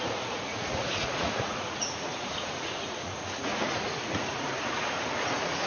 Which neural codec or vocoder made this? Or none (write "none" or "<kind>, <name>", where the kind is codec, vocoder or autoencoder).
vocoder, Vocos